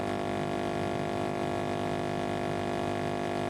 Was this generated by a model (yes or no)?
no